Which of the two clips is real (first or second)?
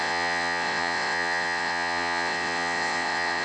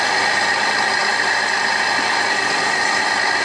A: second